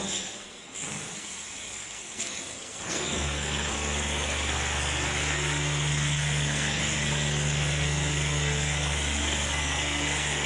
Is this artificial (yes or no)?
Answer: yes